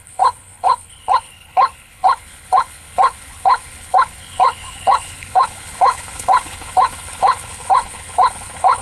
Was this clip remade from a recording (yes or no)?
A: yes